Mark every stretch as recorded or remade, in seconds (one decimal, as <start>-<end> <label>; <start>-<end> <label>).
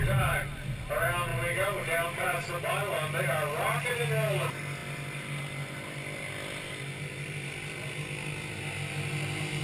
0.0-9.6 recorded